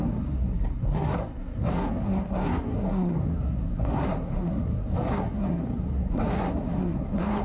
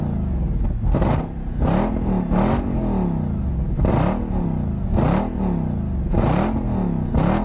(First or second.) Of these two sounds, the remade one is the first